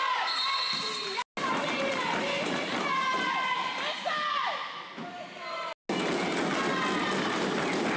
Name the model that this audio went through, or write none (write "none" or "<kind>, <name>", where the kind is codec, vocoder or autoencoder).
none